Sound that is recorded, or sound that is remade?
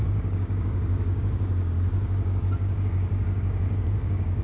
remade